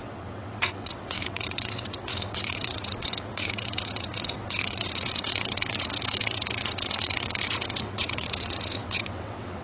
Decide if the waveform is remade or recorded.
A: remade